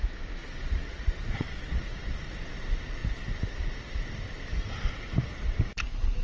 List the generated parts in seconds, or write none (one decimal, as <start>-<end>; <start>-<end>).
0.4-2.5